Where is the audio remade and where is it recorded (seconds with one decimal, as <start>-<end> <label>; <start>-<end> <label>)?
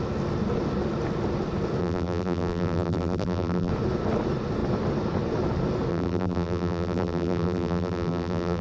0.0-1.8 recorded; 1.8-3.7 remade; 3.7-5.9 recorded; 5.9-8.6 remade